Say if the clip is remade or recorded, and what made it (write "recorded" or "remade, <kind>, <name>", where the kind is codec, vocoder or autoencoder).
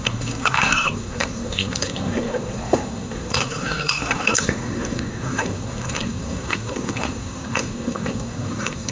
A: remade, codec, SNAC